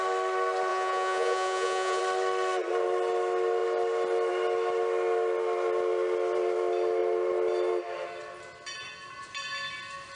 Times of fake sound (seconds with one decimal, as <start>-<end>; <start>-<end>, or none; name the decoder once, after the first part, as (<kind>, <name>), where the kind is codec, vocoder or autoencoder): 0.7-2.0 (vocoder, Vocos)